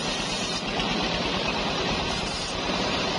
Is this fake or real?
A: fake